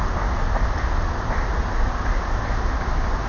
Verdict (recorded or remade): recorded